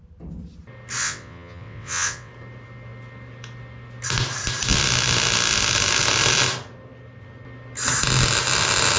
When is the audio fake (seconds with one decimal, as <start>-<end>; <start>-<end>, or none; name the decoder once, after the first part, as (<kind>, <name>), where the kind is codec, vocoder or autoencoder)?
1.0-2.3 (vocoder, WaveNeXt)